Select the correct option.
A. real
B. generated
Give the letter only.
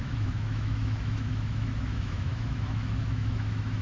B